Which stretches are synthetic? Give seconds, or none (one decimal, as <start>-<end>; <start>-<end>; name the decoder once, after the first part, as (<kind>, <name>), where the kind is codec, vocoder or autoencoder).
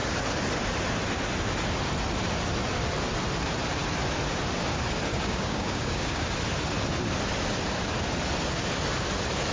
5.1-6.3 (codec, DAC)